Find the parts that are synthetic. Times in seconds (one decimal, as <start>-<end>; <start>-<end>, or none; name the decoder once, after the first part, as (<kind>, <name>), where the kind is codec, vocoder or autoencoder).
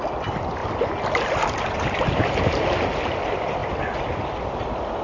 0.0-0.6 (vocoder, BigVGAN v2); 2.4-3.6; 4.4-5.0